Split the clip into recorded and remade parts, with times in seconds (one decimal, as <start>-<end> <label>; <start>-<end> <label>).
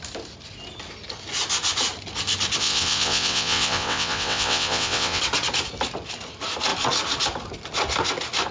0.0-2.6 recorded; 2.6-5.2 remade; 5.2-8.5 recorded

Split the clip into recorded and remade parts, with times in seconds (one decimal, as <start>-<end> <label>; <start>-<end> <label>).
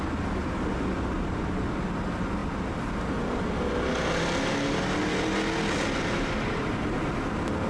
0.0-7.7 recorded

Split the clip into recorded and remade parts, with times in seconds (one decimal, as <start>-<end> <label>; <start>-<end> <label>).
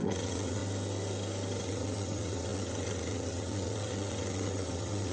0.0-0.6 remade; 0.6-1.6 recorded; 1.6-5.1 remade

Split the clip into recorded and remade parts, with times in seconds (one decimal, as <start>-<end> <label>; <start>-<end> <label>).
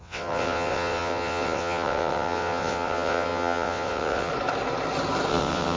0.0-4.3 remade; 4.3-5.3 recorded; 5.3-5.8 remade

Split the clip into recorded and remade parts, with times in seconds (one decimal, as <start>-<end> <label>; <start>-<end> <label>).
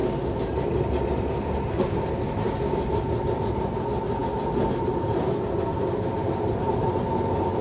0.0-7.6 recorded